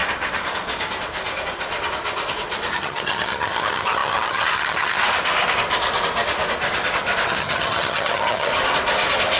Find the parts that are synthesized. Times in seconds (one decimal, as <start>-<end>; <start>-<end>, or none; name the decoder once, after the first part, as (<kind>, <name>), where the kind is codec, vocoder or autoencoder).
2.7-5.0 (vocoder, HiFi-GAN); 7.3-8.5